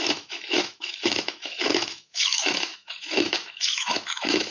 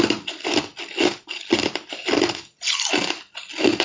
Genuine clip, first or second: second